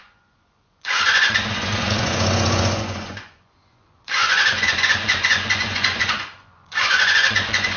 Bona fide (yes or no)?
no